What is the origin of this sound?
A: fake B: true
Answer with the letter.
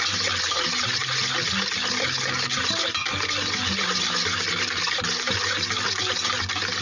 B